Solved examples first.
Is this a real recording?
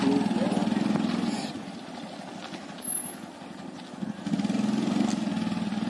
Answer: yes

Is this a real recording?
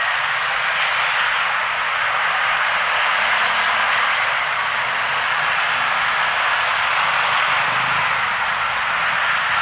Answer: yes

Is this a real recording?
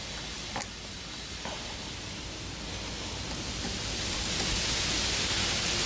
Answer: yes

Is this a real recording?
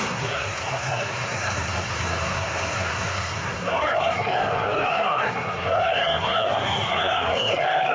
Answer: no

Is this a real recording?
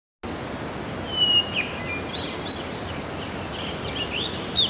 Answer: yes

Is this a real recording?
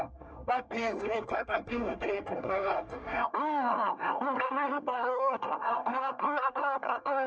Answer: no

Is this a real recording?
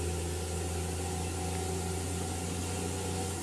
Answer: yes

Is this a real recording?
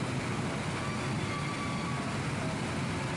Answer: yes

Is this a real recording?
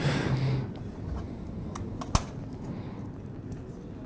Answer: yes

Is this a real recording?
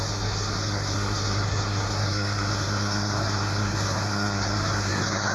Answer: no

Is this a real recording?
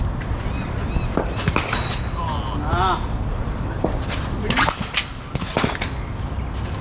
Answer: yes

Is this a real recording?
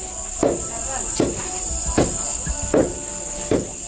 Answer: yes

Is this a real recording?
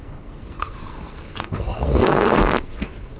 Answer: no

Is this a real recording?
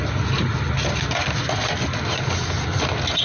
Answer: yes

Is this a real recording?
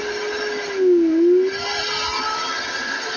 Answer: yes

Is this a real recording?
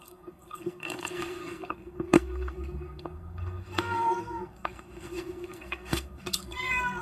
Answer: no